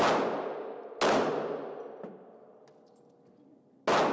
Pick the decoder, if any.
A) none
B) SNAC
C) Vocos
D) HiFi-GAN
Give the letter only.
A